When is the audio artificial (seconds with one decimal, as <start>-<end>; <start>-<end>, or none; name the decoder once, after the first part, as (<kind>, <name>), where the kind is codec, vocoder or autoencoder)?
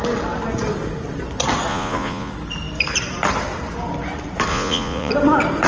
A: 1.7-2.3 (vocoder, Vocos); 4.5-5.1